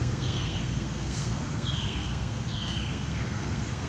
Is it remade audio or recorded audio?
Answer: remade